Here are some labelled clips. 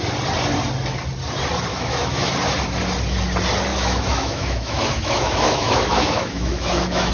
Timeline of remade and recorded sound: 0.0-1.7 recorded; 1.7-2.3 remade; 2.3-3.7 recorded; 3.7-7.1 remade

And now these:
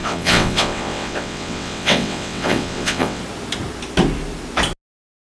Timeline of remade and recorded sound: 0.0-3.2 remade; 3.2-5.4 recorded

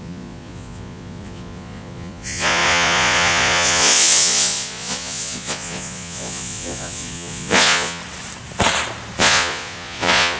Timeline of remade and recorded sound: 0.0-8.0 remade; 8.0-9.2 recorded; 9.2-10.4 remade

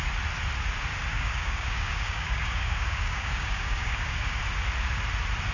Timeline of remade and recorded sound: 0.0-1.1 recorded; 1.1-4.4 remade; 4.4-5.5 recorded